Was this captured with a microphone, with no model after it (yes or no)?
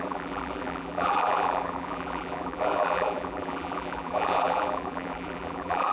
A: no